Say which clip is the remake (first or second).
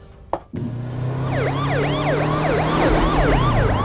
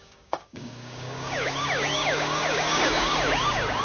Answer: second